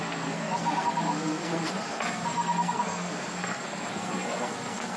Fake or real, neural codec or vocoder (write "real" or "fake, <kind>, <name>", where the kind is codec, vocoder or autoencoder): fake, codec, SNAC